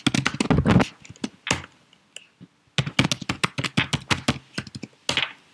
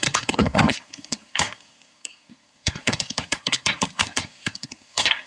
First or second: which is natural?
first